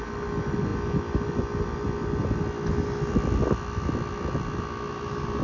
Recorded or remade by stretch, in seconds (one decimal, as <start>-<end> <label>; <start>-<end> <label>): 0.0-5.4 recorded